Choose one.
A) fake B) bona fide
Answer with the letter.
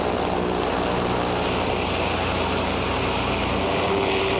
B